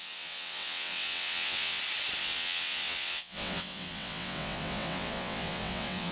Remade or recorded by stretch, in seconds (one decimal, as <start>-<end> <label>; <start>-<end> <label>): 0.0-1.8 remade; 1.8-2.2 recorded; 2.2-6.1 remade